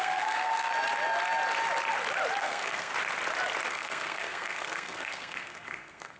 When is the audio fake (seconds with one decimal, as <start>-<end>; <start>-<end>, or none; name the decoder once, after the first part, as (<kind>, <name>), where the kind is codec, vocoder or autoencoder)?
0.0-0.7 (codec, SNAC); 2.4-2.9; 3.7-6.2